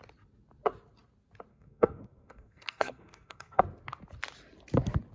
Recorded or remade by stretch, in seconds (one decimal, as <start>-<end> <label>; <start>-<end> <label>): 0.0-1.5 recorded; 1.5-3.6 remade; 3.6-5.1 recorded